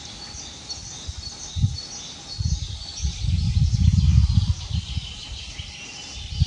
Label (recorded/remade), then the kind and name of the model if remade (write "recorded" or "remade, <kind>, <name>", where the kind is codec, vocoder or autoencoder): recorded